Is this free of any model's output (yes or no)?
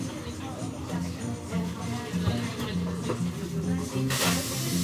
yes